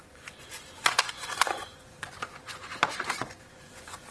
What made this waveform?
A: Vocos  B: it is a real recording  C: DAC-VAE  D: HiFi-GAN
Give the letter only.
A